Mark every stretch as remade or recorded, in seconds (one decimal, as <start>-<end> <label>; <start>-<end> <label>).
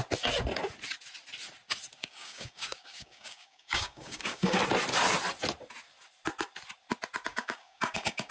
0.0-2.0 recorded; 2.0-4.6 remade; 4.6-7.3 recorded; 7.3-8.3 remade